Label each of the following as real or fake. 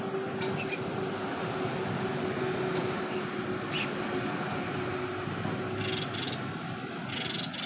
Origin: real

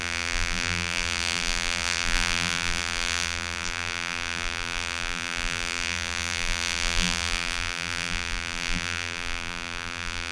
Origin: fake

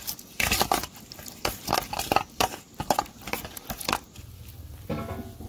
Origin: real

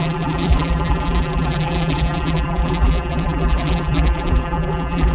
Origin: fake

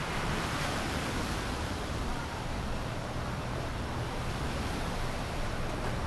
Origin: fake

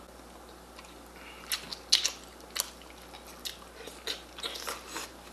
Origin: real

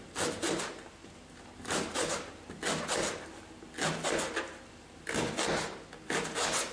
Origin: real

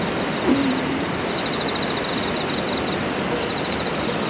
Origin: real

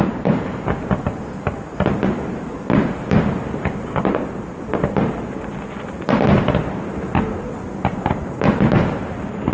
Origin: fake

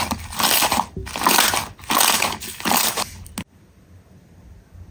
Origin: real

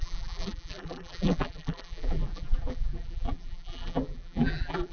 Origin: fake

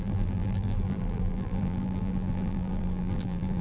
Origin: fake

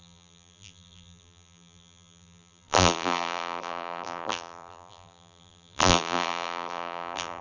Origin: fake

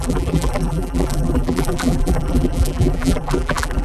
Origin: fake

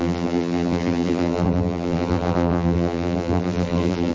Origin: fake